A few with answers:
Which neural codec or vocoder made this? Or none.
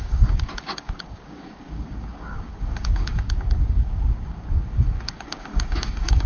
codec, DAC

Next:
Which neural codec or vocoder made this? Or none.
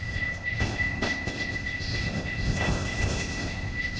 codec, ZipCodec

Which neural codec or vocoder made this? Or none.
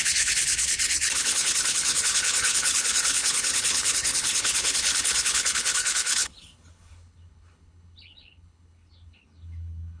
codec, HILCodec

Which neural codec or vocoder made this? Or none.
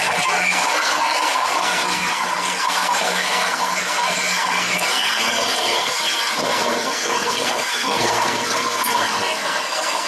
codec, SNAC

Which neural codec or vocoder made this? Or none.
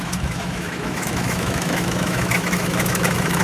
autoencoder, DAC-VAE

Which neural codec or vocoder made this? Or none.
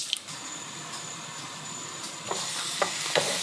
vocoder, BigVGAN v2